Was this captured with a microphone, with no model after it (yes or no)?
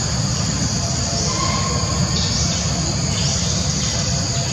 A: yes